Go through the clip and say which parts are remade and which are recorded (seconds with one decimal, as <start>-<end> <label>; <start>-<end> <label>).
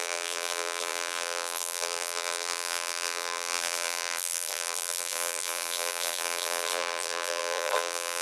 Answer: 0.0-8.2 remade